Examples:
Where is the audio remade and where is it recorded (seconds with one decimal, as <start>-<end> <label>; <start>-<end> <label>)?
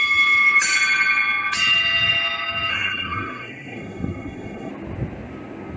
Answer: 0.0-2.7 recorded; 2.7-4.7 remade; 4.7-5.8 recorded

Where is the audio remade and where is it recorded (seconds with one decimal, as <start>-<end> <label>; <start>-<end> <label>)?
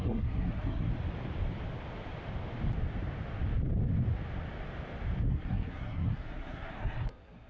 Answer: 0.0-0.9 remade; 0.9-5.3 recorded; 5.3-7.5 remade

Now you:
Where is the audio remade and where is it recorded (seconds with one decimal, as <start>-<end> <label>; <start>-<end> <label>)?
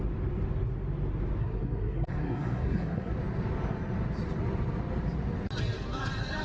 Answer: 0.0-1.4 recorded; 1.4-3.1 remade; 3.1-6.4 recorded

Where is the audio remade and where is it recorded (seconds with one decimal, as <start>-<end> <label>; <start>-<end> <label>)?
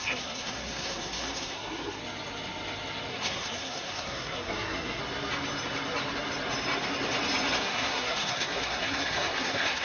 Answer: 0.0-2.0 remade; 2.0-3.1 recorded; 3.1-5.0 remade; 5.0-7.6 recorded; 7.6-9.8 remade